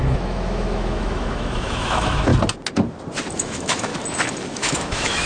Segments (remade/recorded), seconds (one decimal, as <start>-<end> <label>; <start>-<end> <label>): 0.0-2.3 remade; 2.3-3.4 recorded; 3.4-3.9 remade; 3.9-4.5 recorded; 4.5-5.3 remade